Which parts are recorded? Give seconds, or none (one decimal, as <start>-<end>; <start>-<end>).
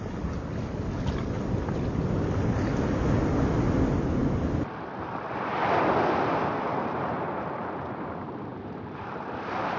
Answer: 0.0-4.2; 4.9-8.5